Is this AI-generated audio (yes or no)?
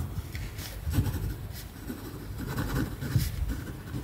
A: no